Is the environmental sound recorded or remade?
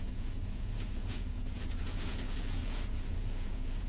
remade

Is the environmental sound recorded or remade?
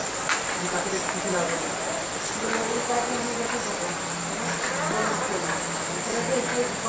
recorded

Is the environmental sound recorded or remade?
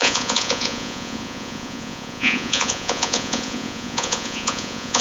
remade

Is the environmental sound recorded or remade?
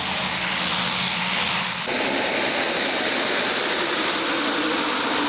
recorded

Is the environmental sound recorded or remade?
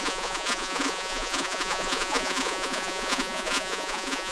remade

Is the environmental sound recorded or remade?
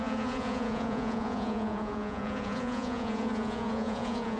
remade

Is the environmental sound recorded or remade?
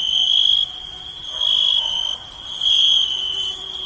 recorded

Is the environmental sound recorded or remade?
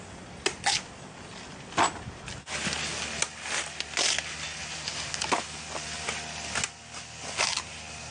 recorded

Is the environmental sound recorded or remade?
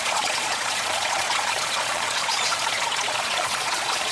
remade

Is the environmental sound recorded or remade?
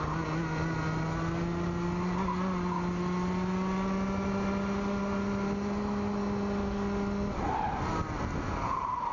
recorded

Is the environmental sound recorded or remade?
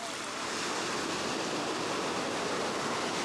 recorded